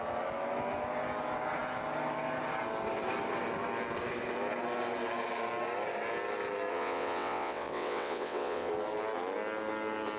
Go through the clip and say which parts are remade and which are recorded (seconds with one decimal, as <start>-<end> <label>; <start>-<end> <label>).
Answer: 0.0-6.7 recorded; 6.7-8.7 remade; 8.7-10.2 recorded